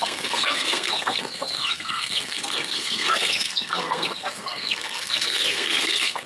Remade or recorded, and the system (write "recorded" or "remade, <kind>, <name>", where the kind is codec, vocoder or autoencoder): remade, codec, SNAC